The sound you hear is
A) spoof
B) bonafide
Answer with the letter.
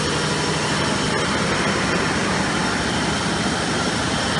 B